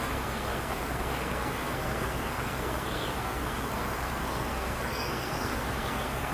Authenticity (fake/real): fake